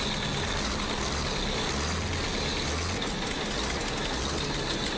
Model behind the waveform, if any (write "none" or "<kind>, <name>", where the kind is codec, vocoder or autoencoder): none